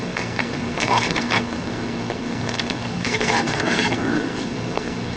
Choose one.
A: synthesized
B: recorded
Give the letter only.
A